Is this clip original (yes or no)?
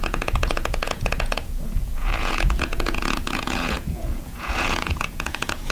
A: no